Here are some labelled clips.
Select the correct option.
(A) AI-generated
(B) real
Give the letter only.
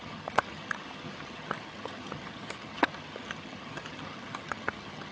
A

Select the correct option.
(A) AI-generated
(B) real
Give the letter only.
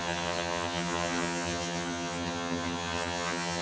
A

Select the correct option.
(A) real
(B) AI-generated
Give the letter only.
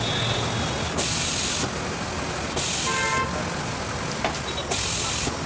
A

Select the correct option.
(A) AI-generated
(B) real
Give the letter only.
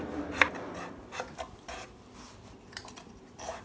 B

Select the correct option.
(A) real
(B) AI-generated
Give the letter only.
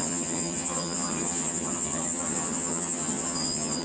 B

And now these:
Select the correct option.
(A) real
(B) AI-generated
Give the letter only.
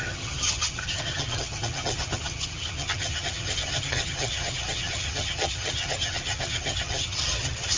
B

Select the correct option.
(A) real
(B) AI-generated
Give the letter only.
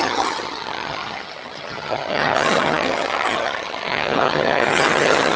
B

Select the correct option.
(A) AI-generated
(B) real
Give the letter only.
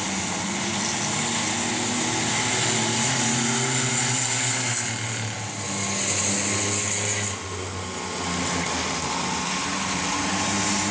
B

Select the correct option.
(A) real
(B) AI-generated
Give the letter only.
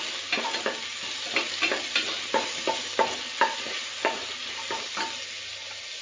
A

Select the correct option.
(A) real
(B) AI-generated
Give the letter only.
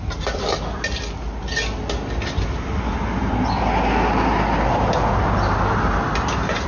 A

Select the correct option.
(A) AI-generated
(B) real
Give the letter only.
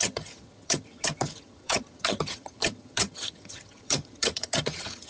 A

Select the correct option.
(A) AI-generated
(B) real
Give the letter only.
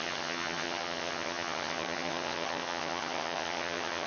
A